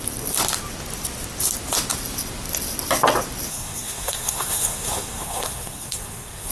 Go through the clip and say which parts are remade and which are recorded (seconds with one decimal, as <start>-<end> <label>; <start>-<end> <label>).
0.0-3.5 recorded; 3.5-6.5 remade

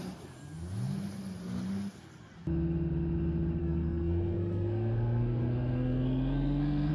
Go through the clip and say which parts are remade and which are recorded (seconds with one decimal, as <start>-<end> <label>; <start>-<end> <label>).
0.0-3.6 recorded; 3.6-6.9 remade

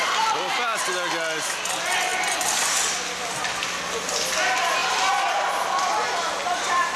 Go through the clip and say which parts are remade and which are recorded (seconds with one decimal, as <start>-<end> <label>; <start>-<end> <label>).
0.0-7.0 recorded

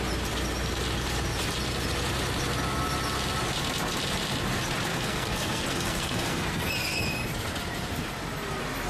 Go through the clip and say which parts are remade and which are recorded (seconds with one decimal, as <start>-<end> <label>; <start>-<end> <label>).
0.0-4.9 recorded; 4.9-6.7 remade; 6.7-8.9 recorded

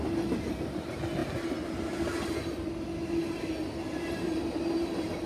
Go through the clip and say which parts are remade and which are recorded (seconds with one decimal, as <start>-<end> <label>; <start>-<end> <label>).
0.0-5.3 recorded

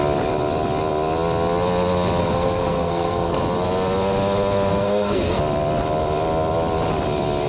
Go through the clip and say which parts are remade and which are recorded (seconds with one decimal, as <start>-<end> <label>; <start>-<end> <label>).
0.0-2.2 recorded; 2.2-3.4 remade; 3.4-4.7 recorded; 4.7-5.4 remade; 5.4-7.5 recorded

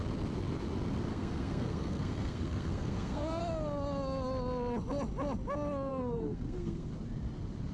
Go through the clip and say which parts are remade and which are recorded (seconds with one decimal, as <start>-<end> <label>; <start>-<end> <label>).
0.0-1.1 recorded; 1.1-3.4 remade; 3.4-5.9 recorded; 5.9-6.9 remade; 6.9-7.7 recorded

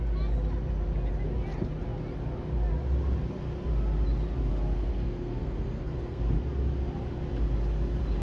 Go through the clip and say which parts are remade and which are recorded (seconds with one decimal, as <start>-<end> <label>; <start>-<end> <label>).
0.0-4.9 recorded; 4.9-6.2 remade; 6.2-8.2 recorded